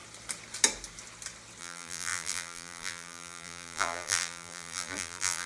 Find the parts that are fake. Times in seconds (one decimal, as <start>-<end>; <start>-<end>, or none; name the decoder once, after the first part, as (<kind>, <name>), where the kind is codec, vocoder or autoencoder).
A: 1.6-5.5 (vocoder, BigVGAN v2)